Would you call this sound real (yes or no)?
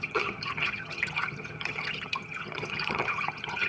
no